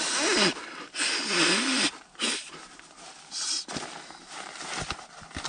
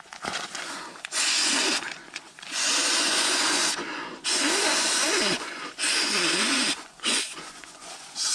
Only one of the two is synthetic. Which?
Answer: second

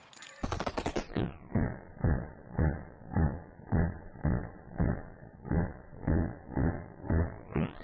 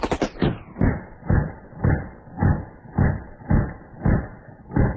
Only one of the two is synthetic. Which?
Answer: first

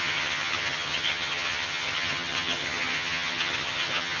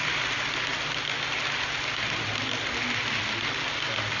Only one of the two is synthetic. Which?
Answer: first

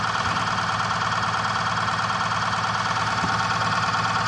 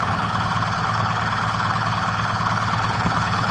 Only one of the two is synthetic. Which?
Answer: second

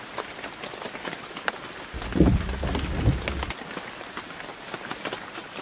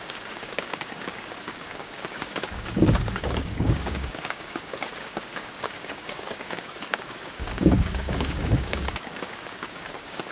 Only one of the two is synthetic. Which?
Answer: second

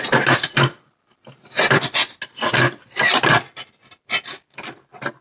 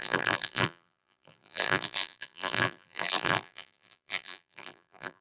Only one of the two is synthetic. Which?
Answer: second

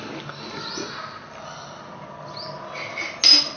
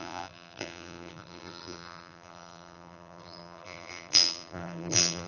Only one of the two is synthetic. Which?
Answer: second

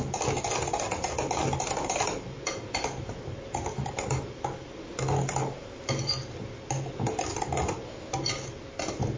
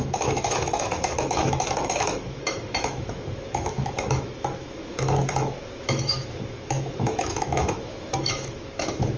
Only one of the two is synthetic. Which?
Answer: second